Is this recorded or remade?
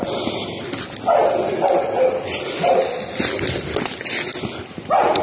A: recorded